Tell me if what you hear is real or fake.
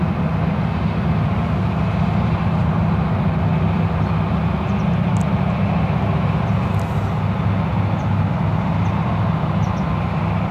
real